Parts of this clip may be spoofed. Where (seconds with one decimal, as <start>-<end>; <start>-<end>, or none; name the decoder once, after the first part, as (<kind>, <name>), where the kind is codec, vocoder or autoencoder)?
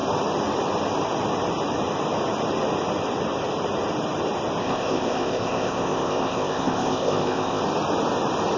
4.6-7.6 (codec, ZipCodec)